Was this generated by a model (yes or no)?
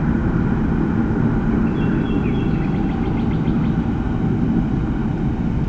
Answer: no